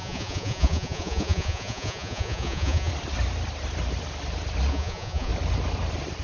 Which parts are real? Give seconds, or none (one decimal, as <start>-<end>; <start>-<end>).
2.9-4.7; 5.3-6.2